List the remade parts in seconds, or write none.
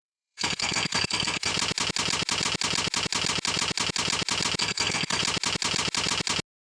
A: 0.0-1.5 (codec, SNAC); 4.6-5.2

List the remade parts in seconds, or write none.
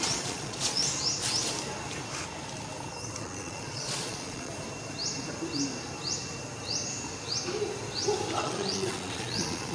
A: 0.0-0.8 (vocoder, Vocos); 3.2-4.5; 8.4-9.7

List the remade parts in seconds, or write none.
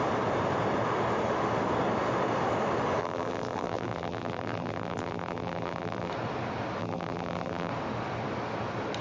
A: 3.0-6.1 (vocoder, BigVGAN v2); 6.8-7.7